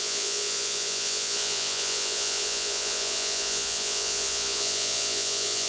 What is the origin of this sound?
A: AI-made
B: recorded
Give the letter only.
A